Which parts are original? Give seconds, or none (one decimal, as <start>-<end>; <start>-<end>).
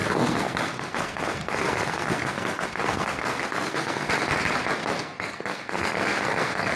4.1-4.8